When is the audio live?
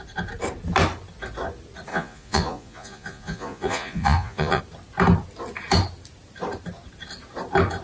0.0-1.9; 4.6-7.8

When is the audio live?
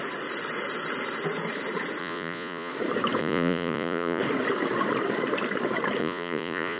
0.0-2.0; 2.7-3.2; 4.2-6.0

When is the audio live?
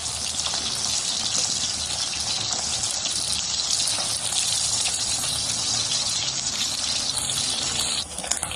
0.0-4.7; 6.2-8.6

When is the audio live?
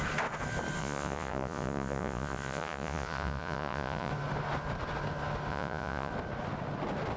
0.0-0.8; 4.1-5.5; 6.1-7.2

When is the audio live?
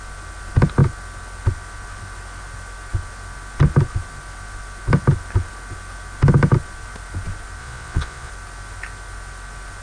0.0-7.6; 8.3-9.8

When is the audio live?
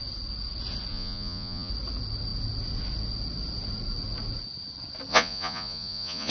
0.0-0.9; 1.7-5.1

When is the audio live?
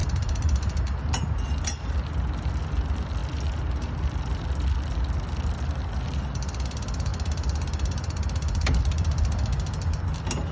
0.0-10.5